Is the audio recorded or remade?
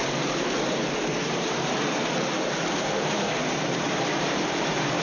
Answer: remade